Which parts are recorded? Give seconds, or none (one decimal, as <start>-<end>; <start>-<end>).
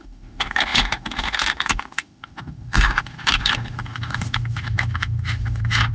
none